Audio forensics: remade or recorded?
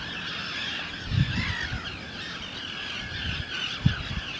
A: recorded